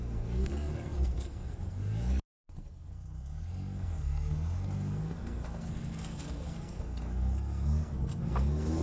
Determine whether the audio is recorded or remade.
remade